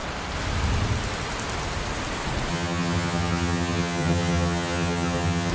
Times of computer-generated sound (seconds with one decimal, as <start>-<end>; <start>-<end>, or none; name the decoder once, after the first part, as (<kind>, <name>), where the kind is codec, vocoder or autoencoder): 2.5-5.5 (vocoder, HiFi-GAN)